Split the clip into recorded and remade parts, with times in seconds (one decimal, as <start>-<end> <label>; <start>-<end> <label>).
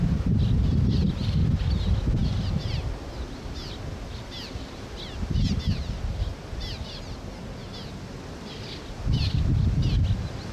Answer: 0.0-10.5 recorded